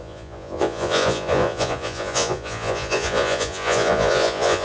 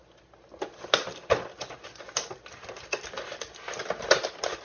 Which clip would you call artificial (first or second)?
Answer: first